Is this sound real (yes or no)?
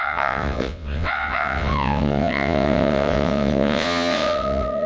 no